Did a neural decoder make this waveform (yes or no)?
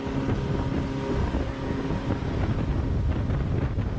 no